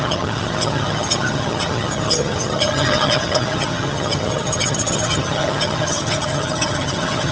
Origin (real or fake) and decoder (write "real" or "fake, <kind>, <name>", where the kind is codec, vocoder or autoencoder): fake, vocoder, HiFi-GAN